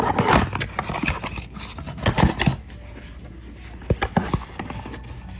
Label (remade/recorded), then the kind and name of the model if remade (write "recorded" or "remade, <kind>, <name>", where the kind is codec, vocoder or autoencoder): recorded